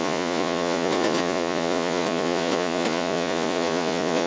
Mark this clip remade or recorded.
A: remade